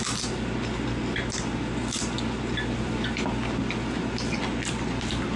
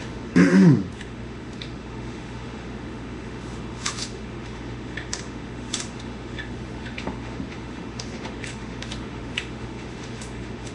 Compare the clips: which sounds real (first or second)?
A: first